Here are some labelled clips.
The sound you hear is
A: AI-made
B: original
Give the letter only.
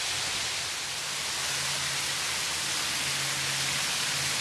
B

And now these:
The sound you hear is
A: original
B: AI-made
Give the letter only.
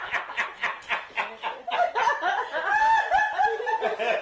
A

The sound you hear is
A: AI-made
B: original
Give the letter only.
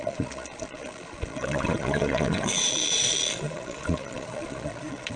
A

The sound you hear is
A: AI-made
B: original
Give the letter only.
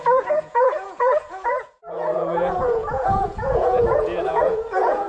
A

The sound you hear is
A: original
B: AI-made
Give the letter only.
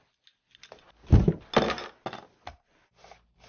A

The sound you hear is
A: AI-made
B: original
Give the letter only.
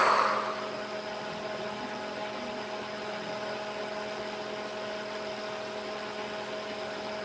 B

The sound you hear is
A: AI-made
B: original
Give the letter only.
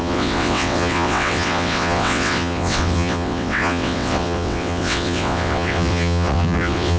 A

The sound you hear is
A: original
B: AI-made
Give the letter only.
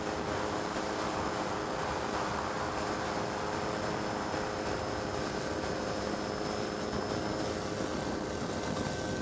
A